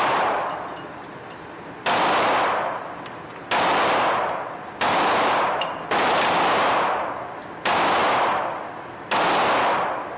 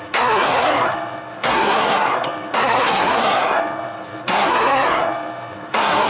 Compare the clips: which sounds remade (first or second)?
second